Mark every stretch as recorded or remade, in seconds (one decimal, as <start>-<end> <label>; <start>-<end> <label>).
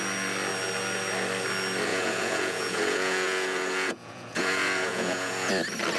0.0-1.9 recorded; 1.9-5.5 remade; 5.5-6.0 recorded